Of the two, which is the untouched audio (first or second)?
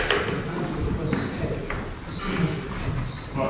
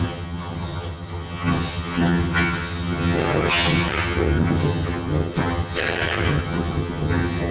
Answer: first